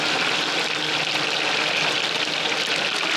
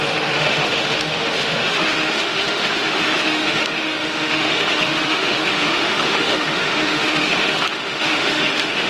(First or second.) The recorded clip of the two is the first